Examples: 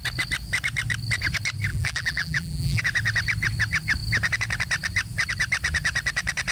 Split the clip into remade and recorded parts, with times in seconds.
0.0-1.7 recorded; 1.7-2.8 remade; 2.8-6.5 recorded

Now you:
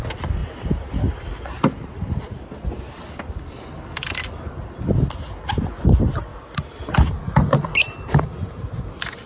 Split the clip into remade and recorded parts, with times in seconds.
0.0-6.3 recorded; 6.3-7.2 remade; 7.2-9.3 recorded

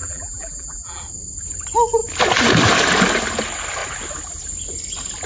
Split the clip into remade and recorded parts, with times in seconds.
0.0-1.0 remade; 1.0-5.3 recorded